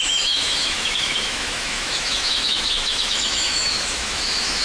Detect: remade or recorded remade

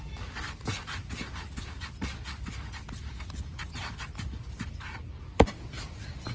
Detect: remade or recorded recorded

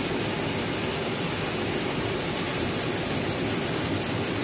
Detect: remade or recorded recorded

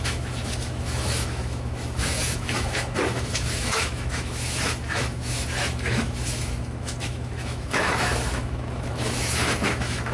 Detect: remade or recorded remade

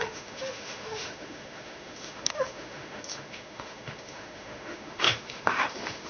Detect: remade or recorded remade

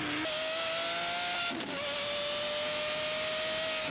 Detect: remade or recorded recorded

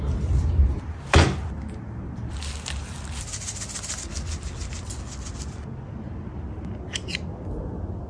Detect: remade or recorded recorded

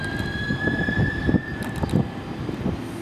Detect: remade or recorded recorded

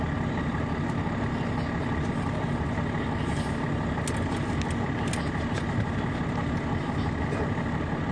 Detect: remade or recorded recorded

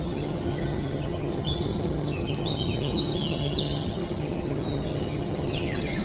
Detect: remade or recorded remade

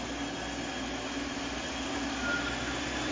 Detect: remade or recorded recorded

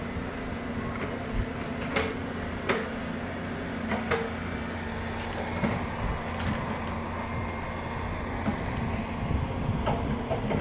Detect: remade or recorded recorded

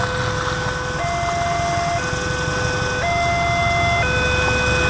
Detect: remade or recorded recorded